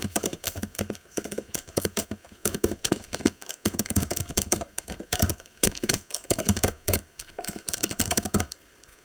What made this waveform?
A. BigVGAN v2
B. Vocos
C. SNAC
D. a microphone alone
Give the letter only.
C